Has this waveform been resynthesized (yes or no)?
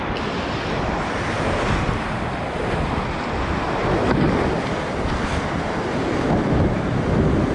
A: no